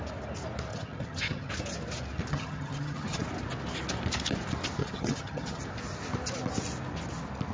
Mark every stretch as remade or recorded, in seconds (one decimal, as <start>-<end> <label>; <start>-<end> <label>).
0.0-0.7 recorded; 0.7-1.5 remade; 1.5-2.3 recorded; 2.3-3.2 remade; 3.2-4.8 recorded; 4.8-5.6 remade; 5.6-7.5 recorded